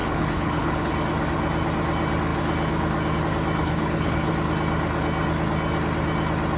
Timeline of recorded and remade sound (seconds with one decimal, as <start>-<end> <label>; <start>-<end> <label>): 0.0-0.9 remade; 0.9-3.6 recorded; 3.6-4.3 remade; 4.3-6.6 recorded